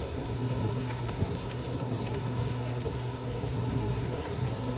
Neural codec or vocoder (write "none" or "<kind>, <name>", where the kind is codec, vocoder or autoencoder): codec, SNAC